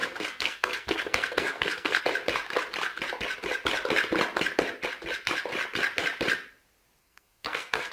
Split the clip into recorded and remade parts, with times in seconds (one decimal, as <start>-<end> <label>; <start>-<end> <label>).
0.0-2.0 remade; 2.0-7.0 recorded; 7.0-7.9 remade